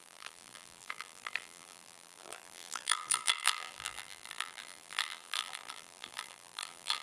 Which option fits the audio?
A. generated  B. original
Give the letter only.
A